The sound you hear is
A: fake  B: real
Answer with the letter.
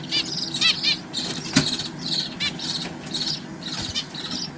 B